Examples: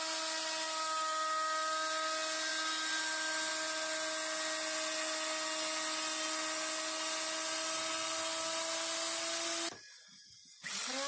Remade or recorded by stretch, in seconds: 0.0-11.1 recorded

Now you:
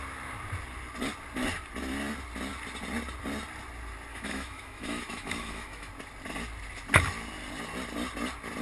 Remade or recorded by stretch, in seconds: 0.0-4.1 recorded; 4.1-5.9 remade; 5.9-8.6 recorded

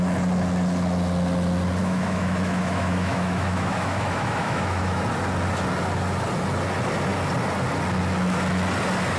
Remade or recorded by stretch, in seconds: 0.0-1.8 recorded; 1.8-5.0 remade; 5.0-9.2 recorded

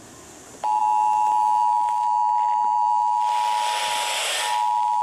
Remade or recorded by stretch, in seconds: 0.0-5.0 recorded